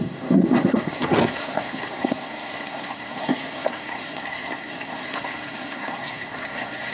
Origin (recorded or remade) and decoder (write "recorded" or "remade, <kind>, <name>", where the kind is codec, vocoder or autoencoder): remade, codec, SNAC